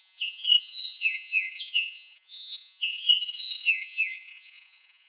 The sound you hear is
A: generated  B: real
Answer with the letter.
A